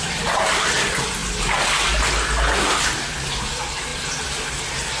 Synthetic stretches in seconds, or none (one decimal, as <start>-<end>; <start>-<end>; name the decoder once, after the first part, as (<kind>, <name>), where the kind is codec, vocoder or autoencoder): none